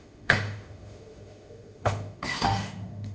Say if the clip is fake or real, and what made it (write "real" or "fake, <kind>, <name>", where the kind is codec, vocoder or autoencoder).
fake, autoencoder, DAC-VAE